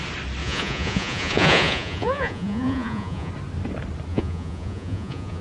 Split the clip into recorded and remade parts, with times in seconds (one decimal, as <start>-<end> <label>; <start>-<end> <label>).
0.0-0.4 recorded; 0.4-3.3 remade; 3.3-4.1 recorded; 4.1-5.4 remade